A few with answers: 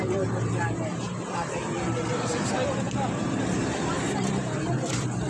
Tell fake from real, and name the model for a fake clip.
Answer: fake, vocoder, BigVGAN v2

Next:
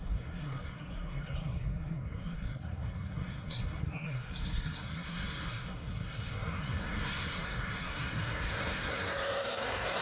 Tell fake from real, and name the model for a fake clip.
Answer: fake, codec, SNAC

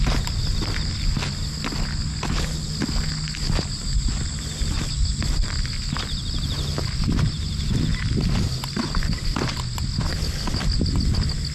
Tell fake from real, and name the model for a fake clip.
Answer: real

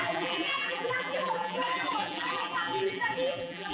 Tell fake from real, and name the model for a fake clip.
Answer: fake, vocoder, BigVGAN v2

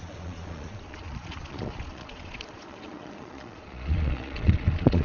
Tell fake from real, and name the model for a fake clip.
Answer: fake, vocoder, Vocos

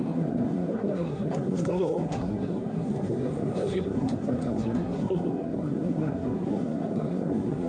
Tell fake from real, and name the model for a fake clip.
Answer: fake, codec, SNAC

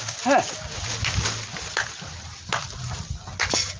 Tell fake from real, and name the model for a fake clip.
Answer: real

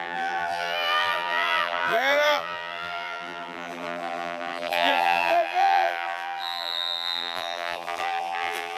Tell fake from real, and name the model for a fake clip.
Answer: fake, vocoder, BigVGAN v2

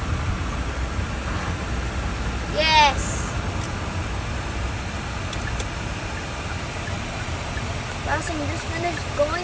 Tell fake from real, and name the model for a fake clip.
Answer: real